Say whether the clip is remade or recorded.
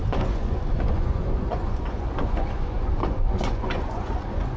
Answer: remade